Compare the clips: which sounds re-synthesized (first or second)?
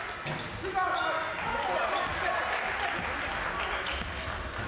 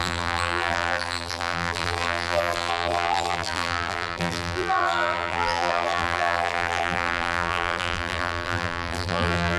second